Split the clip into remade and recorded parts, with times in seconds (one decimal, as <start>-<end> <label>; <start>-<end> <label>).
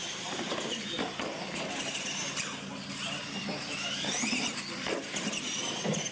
0.0-0.5 remade; 0.5-6.1 recorded